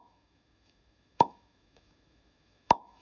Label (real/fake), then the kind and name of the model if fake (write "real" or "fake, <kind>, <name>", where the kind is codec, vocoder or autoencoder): fake, autoencoder, DAC-VAE